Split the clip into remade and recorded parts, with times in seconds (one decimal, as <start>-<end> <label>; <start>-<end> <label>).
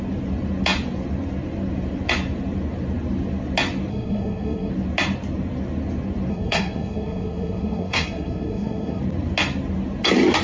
0.0-3.9 recorded; 3.9-4.7 remade; 4.7-6.3 recorded; 6.3-9.0 remade; 9.0-10.4 recorded